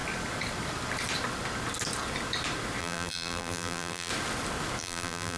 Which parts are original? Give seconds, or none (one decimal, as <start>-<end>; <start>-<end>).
0.0-2.8; 4.1-4.8